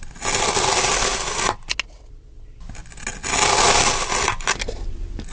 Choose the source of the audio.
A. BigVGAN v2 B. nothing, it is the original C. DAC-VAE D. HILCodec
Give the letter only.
B